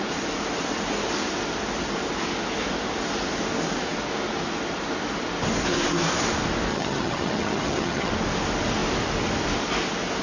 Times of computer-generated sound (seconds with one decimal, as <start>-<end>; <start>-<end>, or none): 6.7-8.1